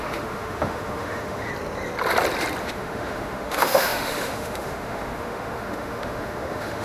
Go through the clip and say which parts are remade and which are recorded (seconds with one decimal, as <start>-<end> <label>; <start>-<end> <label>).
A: 0.0-1.5 remade; 1.5-2.6 recorded; 2.6-6.8 remade